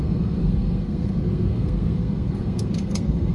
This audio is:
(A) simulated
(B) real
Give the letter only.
A